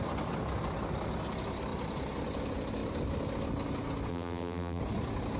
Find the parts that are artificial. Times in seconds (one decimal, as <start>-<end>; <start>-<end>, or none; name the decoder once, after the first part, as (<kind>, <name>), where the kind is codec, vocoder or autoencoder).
4.1-4.8 (vocoder, BigVGAN v2)